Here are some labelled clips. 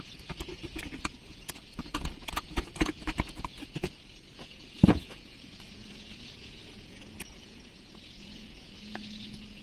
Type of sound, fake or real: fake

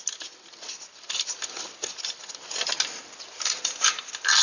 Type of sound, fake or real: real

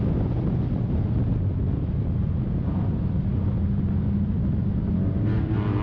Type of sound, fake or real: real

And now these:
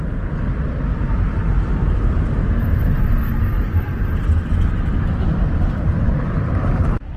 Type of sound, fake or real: real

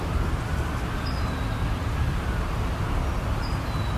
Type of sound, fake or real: real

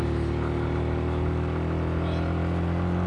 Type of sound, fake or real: real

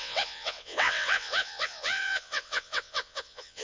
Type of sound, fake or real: fake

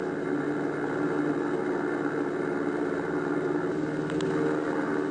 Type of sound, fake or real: real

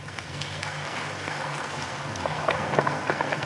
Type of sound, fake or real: fake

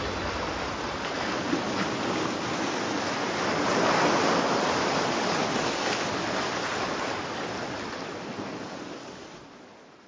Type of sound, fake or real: real